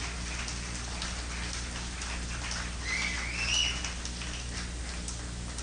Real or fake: real